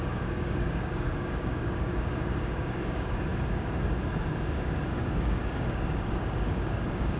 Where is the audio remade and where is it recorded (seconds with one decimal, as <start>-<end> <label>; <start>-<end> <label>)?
0.0-7.2 remade